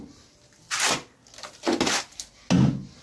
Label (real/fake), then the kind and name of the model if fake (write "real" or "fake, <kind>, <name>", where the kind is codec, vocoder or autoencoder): real